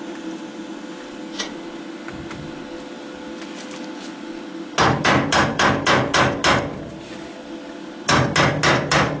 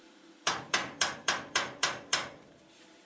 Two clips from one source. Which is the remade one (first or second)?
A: second